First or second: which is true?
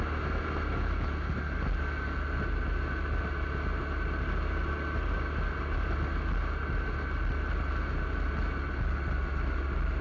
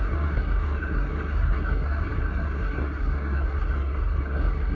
first